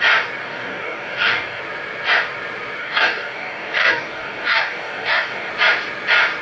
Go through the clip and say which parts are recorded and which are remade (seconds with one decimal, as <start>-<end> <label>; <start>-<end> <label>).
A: 0.0-0.4 recorded; 0.4-1.6 remade; 1.6-2.8 recorded; 2.8-5.5 remade; 5.5-6.4 recorded